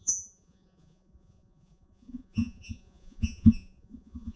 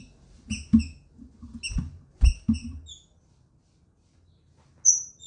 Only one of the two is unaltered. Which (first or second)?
second